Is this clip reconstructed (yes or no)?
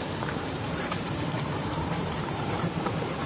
yes